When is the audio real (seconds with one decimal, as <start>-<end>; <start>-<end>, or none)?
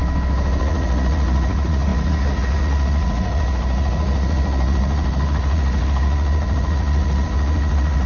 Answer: 0.0-0.6